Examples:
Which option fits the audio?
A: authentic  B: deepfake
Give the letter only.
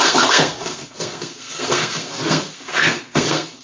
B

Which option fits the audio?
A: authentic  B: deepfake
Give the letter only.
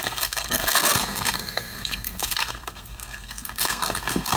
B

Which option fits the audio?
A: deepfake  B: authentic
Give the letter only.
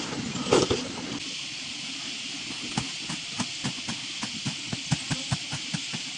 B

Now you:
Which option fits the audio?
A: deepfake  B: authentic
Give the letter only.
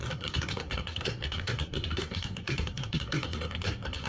A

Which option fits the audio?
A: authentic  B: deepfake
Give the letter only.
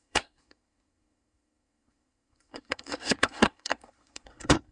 B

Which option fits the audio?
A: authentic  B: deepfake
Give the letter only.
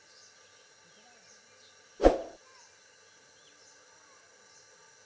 A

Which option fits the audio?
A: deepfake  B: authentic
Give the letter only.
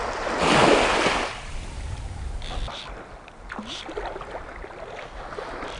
B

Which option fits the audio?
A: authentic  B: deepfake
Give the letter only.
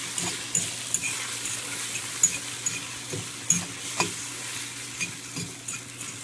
A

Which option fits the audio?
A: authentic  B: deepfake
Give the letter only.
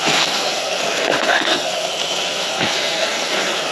B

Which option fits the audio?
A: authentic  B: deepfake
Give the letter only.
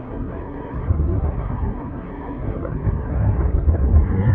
B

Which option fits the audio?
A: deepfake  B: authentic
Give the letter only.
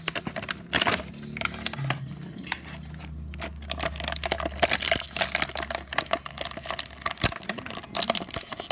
B